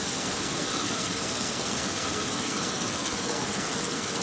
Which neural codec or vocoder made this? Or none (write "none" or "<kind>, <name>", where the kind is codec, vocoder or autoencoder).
codec, SNAC